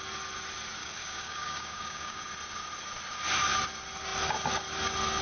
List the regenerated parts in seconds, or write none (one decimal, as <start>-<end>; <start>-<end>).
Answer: 0.8-2.3